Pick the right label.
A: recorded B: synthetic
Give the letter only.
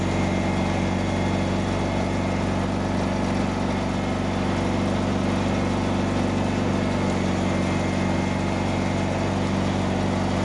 A